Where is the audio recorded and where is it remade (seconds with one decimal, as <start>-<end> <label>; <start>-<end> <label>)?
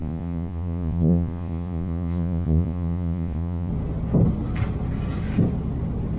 0.0-3.7 remade; 3.7-6.2 recorded